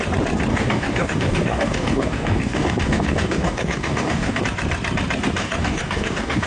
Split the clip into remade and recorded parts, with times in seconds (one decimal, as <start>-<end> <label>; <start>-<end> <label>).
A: 0.0-0.5 recorded; 0.5-4.4 remade; 4.4-5.4 recorded; 5.4-6.5 remade